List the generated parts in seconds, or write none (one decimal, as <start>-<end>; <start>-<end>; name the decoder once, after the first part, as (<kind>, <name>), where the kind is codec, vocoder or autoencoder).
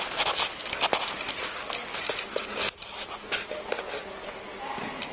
none